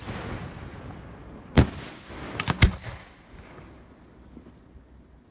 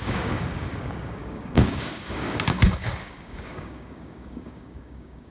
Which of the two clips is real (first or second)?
first